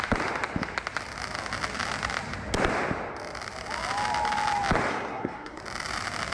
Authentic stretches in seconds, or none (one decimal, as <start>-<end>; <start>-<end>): 0.0-4.9; 5.6-6.3